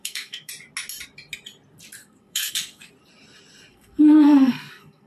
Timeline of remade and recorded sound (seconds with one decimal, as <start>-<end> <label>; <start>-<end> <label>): 0.0-0.5 remade; 0.5-2.0 recorded; 2.0-2.9 remade; 2.9-3.7 recorded; 3.7-5.1 remade